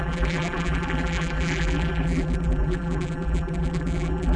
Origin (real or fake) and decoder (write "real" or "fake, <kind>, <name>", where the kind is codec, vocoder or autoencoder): fake, vocoder, BigVGAN v2